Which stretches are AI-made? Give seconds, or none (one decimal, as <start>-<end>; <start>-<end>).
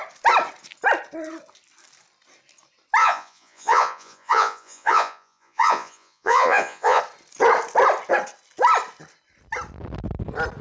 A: 3.0-7.0